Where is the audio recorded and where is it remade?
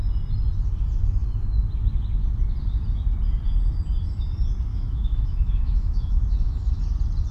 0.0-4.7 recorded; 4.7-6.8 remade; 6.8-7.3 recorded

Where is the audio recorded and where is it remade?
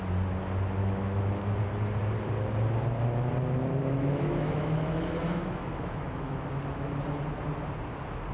0.0-0.8 recorded; 0.8-1.6 remade; 1.6-3.8 recorded; 3.8-6.4 remade; 6.4-8.3 recorded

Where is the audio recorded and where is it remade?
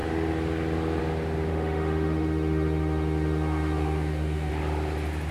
0.0-1.5 recorded; 1.5-4.5 remade; 4.5-5.3 recorded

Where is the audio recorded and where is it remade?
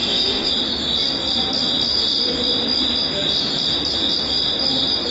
0.0-0.5 remade; 0.5-5.1 recorded